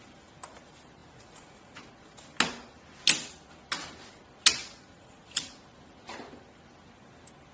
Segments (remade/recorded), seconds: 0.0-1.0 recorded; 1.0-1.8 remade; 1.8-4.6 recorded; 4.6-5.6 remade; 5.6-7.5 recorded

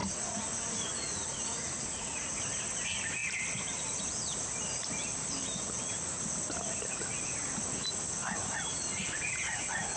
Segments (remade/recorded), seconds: 0.0-2.4 remade; 2.4-8.7 recorded; 8.7-10.0 remade

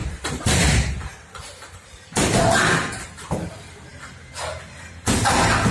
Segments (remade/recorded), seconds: 0.0-2.4 remade; 2.4-5.7 recorded

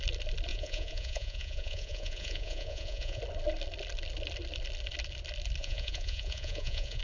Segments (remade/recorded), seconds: 0.0-0.5 recorded; 0.5-3.2 remade; 3.2-5.6 recorded; 5.6-7.0 remade

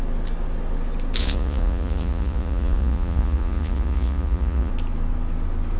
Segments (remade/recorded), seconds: 0.0-1.2 recorded; 1.2-4.7 remade; 4.7-5.8 recorded

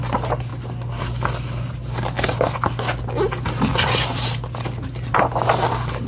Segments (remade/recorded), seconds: 0.0-3.7 recorded; 3.7-5.1 remade; 5.1-6.1 recorded

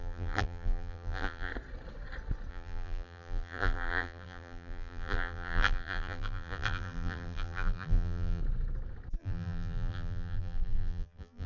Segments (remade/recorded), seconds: 0.0-1.5 remade; 1.5-2.5 recorded; 2.5-8.4 remade; 8.4-9.2 recorded; 9.2-11.5 remade

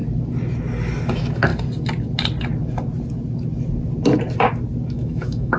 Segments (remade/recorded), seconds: 0.0-1.1 recorded; 1.1-1.5 remade; 1.5-4.9 recorded; 4.9-5.6 remade